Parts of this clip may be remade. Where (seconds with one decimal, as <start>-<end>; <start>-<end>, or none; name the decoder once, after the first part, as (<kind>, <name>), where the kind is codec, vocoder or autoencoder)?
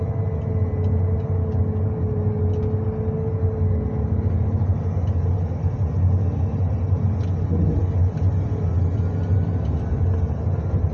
none